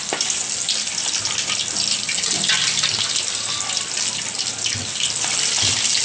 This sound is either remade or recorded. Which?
recorded